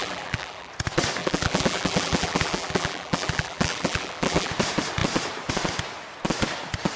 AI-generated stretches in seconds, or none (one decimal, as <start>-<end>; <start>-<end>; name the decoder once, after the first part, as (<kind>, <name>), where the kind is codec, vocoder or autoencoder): 0.0-0.7 (vocoder, BigVGAN v2); 1.2-4.5